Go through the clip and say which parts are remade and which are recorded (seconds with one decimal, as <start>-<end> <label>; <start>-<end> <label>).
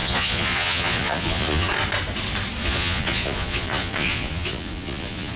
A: 0.0-1.7 remade; 1.7-2.6 recorded; 2.6-5.4 remade